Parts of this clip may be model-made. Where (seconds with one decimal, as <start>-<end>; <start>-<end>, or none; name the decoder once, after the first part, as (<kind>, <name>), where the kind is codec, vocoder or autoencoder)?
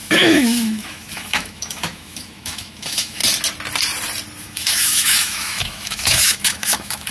0.0-3.2 (autoencoder, DAC-VAE); 4.4-7.1